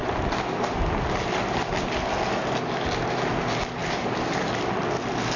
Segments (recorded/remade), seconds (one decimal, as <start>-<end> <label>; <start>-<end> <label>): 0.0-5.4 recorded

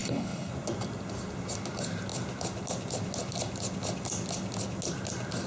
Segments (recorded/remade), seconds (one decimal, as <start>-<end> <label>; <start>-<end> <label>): 0.0-0.5 remade; 0.5-5.5 recorded

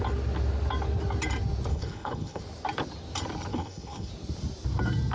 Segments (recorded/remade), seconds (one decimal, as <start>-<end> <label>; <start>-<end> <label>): 0.0-1.7 recorded; 1.7-2.4 remade; 2.4-3.5 recorded; 3.5-4.1 remade; 4.1-5.1 recorded

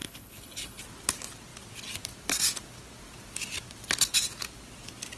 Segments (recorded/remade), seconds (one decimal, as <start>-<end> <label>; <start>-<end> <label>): 0.0-0.8 remade; 0.8-5.2 recorded